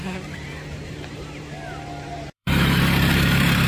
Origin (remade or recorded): remade